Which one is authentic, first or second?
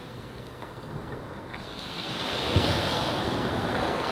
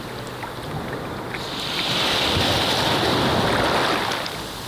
second